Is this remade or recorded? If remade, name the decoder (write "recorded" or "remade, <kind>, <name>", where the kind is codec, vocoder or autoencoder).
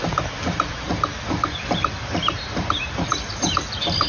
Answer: recorded